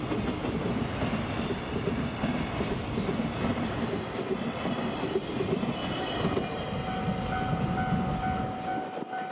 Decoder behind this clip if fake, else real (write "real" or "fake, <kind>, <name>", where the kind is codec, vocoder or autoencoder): real